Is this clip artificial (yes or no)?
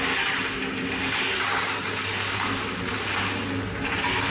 no